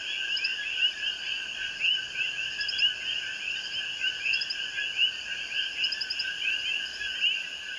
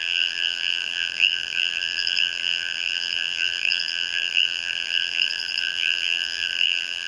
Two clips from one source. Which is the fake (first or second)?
second